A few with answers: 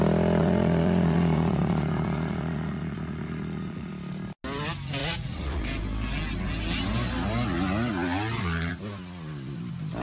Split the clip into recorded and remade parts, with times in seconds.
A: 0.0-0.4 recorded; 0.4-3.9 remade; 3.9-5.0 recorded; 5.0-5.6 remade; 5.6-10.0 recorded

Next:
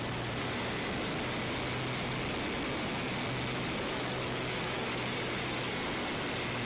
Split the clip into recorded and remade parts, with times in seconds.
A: 0.0-3.9 recorded; 3.9-5.7 remade; 5.7-6.7 recorded

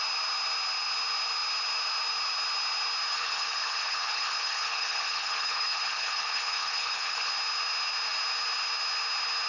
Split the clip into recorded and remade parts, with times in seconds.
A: 0.0-3.1 recorded; 3.1-7.3 remade; 7.3-9.5 recorded

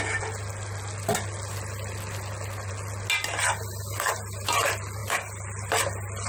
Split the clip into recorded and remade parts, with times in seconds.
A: 0.0-6.3 recorded